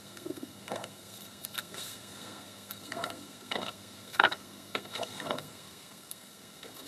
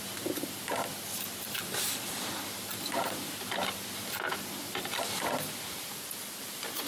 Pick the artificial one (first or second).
first